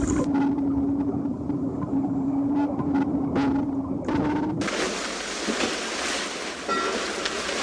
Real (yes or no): yes